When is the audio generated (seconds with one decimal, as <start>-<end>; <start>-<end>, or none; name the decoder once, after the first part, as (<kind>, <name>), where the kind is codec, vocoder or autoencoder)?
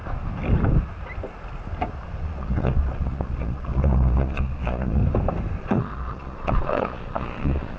2.2-5.0 (vocoder, Vocos); 5.6-7.8